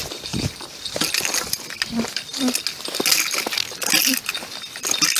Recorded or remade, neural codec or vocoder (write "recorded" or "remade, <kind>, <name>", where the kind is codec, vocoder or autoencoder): recorded